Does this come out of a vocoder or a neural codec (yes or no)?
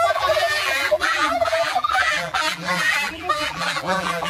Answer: yes